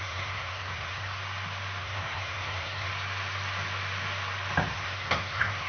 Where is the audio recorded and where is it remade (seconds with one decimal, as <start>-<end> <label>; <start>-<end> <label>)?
0.0-1.2 remade; 1.2-1.8 recorded; 1.8-2.9 remade; 2.9-4.7 recorded; 4.7-5.7 remade